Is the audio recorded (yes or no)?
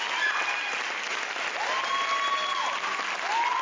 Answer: yes